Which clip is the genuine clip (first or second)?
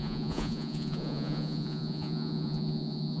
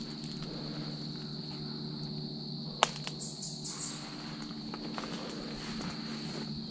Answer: second